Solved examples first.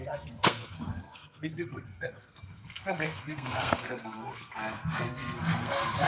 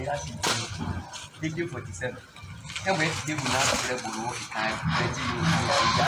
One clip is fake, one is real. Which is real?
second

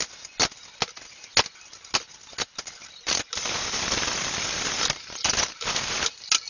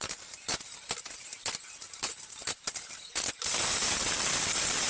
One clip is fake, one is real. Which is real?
first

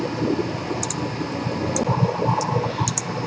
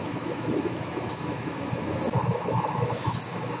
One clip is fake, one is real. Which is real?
first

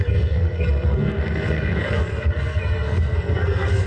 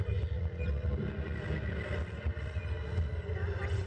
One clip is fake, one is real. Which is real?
second